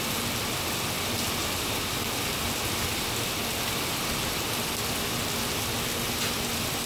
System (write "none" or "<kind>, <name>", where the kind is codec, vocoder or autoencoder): none